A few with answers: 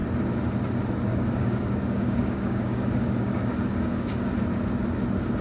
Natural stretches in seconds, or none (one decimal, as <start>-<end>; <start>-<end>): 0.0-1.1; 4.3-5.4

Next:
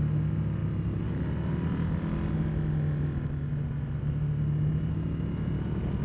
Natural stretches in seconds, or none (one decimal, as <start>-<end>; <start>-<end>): 0.0-6.0

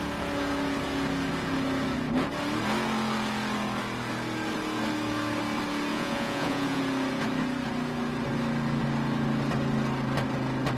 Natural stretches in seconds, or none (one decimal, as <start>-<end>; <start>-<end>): 0.0-5.9; 6.8-10.8

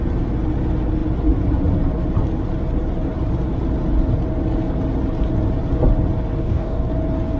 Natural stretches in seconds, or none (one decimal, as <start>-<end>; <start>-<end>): 0.0-6.4; 6.9-7.4

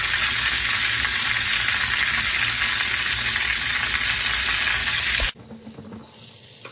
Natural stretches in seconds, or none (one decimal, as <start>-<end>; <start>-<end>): 0.0-4.8; 5.4-6.7